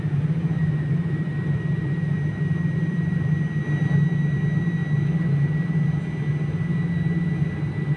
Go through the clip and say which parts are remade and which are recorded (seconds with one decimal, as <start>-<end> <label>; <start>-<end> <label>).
0.0-0.6 recorded; 0.6-3.3 remade; 3.3-8.0 recorded